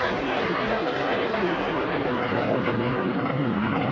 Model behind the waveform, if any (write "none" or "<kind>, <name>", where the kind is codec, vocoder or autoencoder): codec, SNAC